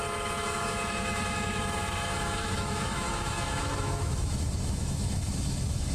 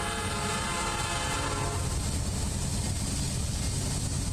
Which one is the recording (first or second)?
second